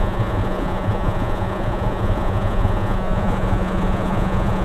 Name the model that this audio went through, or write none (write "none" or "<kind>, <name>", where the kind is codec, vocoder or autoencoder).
vocoder, Vocos